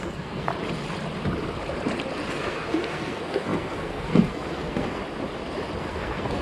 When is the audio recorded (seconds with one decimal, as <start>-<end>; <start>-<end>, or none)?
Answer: 0.5-2.3; 5.0-5.8

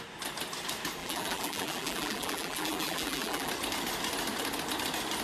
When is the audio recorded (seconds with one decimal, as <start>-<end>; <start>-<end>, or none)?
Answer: 0.0-1.0; 3.5-5.2

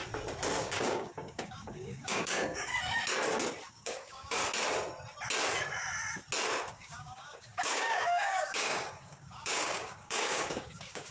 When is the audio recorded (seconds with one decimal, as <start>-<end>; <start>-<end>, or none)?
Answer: 0.0-0.6; 2.7-3.7; 4.4-6.7

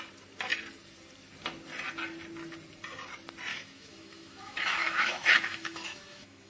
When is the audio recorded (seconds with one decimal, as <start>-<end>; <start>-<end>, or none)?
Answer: 0.0-3.5

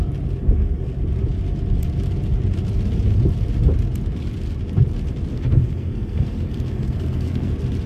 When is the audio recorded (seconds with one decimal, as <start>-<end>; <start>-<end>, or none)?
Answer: 0.0-5.3; 7.5-7.9